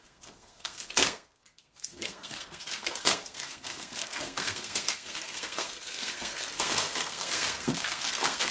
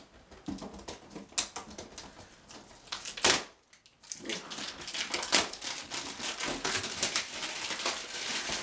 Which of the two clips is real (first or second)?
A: second